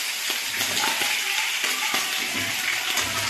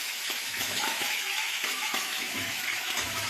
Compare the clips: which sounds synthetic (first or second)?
second